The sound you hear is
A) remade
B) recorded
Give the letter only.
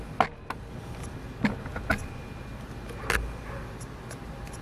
B